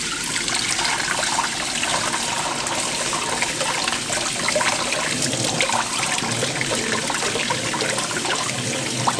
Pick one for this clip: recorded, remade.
recorded